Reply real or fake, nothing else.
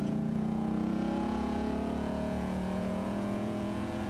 fake